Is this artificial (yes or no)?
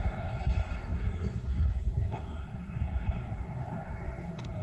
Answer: yes